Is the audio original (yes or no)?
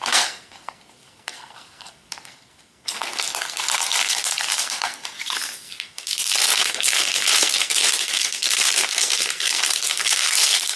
no